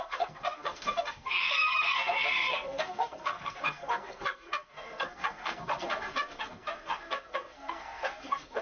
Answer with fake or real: fake